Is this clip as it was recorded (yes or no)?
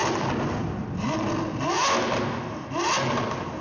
yes